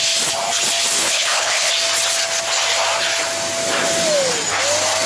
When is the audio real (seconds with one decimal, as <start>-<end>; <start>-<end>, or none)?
0.0-1.0; 1.7-5.1